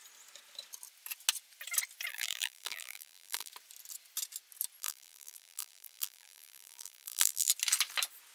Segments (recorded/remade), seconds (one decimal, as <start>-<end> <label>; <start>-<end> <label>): 0.0-2.1 recorded; 2.1-3.5 remade; 3.5-4.8 recorded; 4.8-7.5 remade; 7.5-8.3 recorded